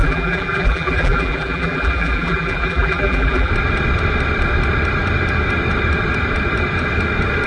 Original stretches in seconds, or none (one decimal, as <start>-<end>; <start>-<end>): 3.5-7.5